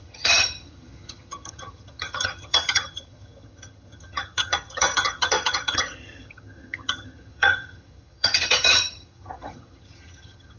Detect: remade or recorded remade